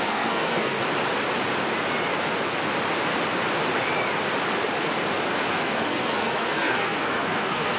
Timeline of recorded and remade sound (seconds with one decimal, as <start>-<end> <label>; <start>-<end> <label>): 0.0-0.8 remade; 0.8-5.5 recorded; 5.5-7.8 remade